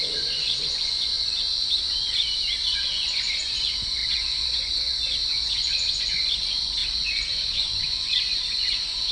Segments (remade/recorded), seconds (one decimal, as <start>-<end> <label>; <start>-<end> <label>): 0.0-9.1 remade